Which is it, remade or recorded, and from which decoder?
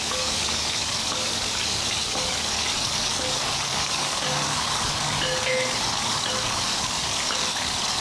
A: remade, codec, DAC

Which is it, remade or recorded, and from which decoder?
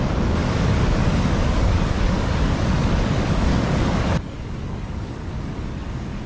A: remade, codec, DAC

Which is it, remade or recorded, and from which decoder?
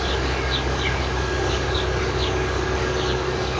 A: remade, codec, DAC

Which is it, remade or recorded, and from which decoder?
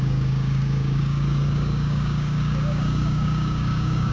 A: remade, codec, DAC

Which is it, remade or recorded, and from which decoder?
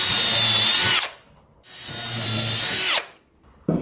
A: recorded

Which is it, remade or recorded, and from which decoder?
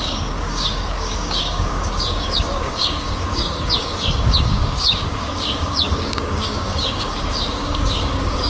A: remade, codec, DAC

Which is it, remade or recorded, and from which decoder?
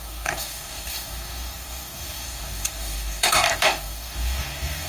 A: remade, codec, DAC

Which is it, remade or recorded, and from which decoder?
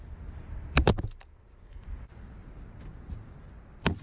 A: recorded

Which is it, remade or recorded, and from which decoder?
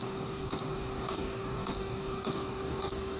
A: remade, codec, DAC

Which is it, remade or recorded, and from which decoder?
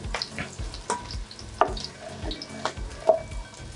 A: recorded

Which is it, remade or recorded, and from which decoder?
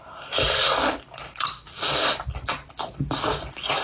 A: recorded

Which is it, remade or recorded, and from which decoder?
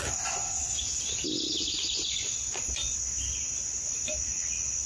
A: recorded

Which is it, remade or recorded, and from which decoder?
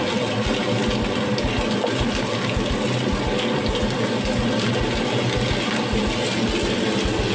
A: recorded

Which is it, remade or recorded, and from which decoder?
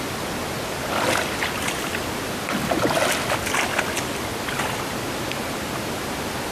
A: recorded